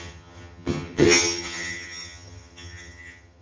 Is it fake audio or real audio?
fake